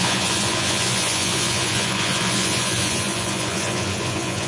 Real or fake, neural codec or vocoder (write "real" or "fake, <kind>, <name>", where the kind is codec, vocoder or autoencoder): fake, vocoder, Vocos